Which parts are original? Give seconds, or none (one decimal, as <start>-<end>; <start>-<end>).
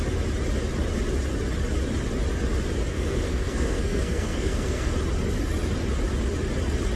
0.0-2.9; 4.9-7.0